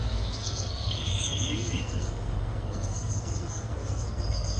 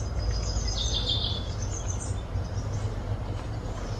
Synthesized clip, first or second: first